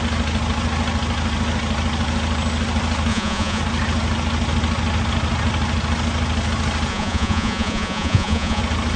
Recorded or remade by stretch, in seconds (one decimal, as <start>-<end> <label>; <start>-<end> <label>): 0.0-3.1 recorded; 3.1-3.6 remade; 3.6-6.9 recorded; 6.9-8.6 remade; 8.6-9.0 recorded